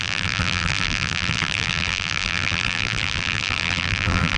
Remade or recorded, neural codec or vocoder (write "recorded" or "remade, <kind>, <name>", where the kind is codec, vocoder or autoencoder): remade, vocoder, BigVGAN v2